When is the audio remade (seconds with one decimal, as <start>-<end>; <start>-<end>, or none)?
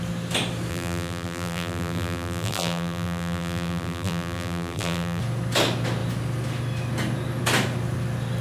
0.7-5.2